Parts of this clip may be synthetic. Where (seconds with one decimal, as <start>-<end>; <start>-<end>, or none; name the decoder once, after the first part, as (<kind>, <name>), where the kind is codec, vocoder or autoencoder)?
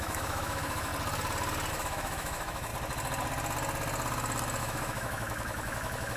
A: 0.0-0.9 (autoencoder, DAC-VAE); 1.7-2.7; 4.6-6.2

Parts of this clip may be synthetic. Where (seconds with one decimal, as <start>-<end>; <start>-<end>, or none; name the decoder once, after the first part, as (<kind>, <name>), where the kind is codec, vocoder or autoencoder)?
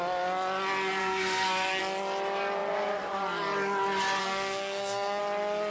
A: 1.0-1.8 (codec, SNAC); 4.2-5.2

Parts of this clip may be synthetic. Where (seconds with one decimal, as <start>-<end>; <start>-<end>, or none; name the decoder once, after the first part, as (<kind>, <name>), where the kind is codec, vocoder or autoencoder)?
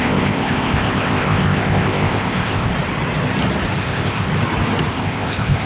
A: 0.0-2.7 (codec, ZipCodec); 3.8-4.3; 4.9-5.7